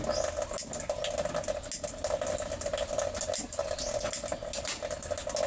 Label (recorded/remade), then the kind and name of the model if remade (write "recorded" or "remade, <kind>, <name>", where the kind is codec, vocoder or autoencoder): recorded